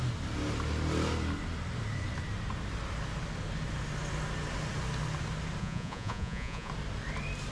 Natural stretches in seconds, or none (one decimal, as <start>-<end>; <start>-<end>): 0.0-5.6; 6.7-7.5